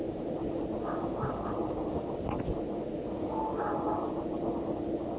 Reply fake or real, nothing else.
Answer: real